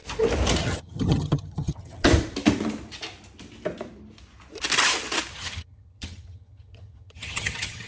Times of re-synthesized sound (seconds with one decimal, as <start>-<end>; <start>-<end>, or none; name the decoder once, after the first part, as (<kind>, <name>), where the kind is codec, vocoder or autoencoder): 0.6-2.1 (vocoder, HiFi-GAN); 5.3-7.9

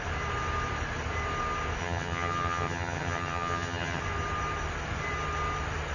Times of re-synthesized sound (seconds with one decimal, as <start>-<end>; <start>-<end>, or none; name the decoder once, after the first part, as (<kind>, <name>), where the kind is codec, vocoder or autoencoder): 1.8-4.0 (vocoder, HiFi-GAN)

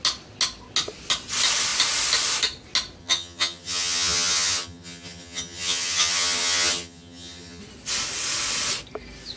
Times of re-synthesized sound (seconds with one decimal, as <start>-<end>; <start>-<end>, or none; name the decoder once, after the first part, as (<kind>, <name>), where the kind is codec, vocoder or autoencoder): 3.0-7.6 (vocoder, HiFi-GAN)

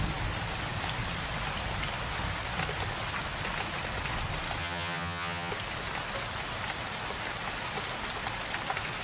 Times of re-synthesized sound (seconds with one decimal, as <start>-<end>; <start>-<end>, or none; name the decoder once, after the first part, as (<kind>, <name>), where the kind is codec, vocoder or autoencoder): 4.6-5.5 (vocoder, HiFi-GAN)